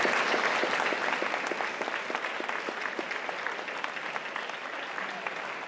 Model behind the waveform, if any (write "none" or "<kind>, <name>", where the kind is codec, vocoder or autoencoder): none